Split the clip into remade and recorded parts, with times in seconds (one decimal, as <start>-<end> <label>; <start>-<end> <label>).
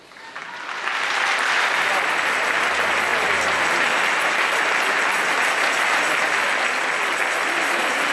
0.0-8.1 recorded